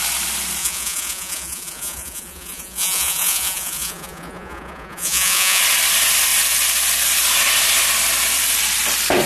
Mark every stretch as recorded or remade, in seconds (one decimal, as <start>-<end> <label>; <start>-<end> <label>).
0.0-0.6 recorded; 0.6-5.6 remade; 5.6-9.3 recorded